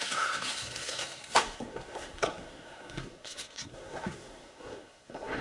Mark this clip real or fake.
fake